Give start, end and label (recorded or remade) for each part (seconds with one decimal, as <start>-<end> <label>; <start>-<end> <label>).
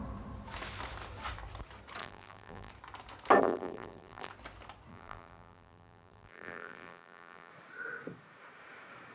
0.0-2.0 recorded; 2.0-2.7 remade; 2.7-3.4 recorded; 3.4-4.3 remade; 4.3-4.9 recorded; 4.9-7.5 remade; 7.5-9.1 recorded